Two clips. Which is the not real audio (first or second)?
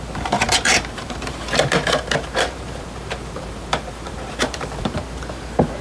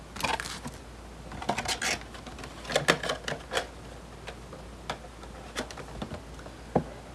first